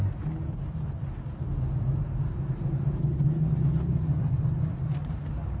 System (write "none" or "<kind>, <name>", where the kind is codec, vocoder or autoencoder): none